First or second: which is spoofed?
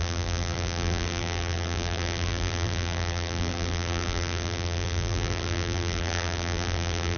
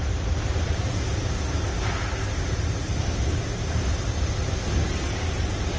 first